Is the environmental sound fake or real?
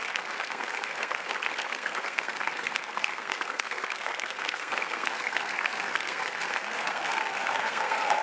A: fake